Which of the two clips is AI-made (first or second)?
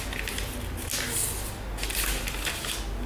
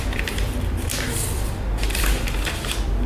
second